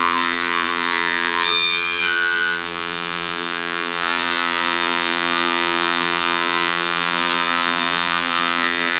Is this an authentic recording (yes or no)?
no